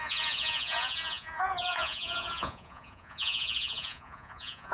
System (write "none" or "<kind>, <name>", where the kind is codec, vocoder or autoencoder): vocoder, Vocos